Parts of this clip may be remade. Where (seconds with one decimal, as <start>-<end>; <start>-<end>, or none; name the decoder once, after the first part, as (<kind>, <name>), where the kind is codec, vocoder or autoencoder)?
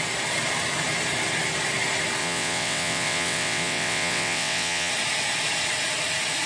2.2-4.9 (vocoder, WaveNeXt)